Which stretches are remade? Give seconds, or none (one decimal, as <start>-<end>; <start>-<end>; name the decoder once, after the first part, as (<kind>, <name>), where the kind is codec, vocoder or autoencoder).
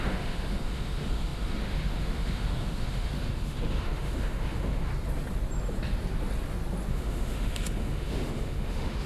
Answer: 0.0-4.9 (autoencoder, DAC-VAE); 6.9-9.1